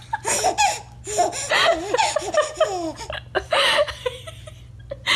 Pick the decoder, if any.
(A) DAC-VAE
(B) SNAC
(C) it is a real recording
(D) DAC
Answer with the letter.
C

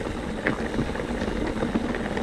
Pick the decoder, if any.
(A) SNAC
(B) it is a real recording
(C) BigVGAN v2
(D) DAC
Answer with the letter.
B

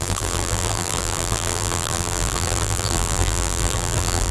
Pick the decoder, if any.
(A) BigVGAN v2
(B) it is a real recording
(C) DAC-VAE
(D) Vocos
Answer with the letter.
A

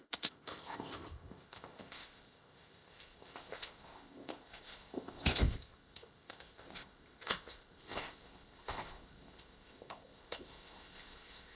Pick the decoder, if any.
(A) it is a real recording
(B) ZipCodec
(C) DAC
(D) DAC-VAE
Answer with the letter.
B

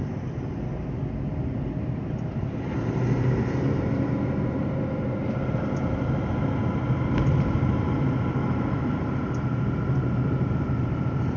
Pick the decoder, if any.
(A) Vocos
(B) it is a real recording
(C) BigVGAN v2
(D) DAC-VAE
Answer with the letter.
B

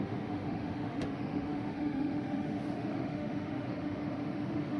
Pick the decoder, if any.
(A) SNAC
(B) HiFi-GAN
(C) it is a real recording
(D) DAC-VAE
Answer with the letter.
D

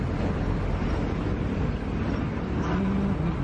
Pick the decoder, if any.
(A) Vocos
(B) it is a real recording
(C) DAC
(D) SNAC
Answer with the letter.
B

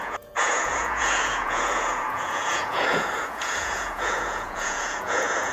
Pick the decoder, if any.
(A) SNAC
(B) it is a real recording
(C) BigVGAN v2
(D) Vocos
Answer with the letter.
D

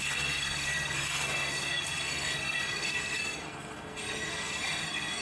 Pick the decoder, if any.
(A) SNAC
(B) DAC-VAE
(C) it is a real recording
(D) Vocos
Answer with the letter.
A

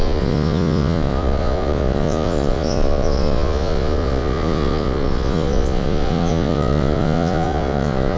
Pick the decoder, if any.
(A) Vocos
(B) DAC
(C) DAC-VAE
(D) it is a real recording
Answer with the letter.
A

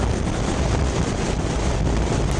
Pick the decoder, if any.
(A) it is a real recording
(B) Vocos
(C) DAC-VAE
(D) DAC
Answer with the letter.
A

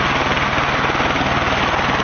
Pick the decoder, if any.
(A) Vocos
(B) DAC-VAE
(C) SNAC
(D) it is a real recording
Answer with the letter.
D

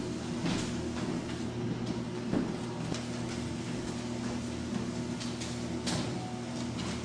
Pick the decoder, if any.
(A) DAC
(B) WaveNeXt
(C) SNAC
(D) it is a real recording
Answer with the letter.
D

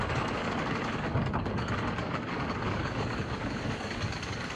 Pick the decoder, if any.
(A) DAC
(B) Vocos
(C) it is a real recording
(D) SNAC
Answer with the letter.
A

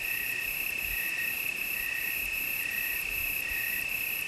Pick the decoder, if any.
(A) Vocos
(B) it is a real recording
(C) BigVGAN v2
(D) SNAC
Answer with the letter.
C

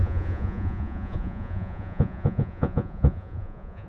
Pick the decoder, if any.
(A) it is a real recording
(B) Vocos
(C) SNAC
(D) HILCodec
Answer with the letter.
B